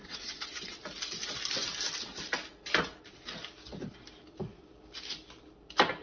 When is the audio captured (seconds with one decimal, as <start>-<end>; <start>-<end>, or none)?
0.8-6.0